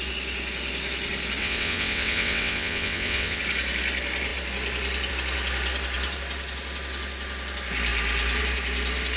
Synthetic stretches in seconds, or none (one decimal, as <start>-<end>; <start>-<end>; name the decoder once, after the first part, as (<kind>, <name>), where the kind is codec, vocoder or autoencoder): 1.4-3.4 (vocoder, WaveNeXt)